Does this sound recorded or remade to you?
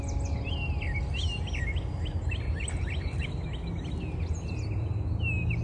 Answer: recorded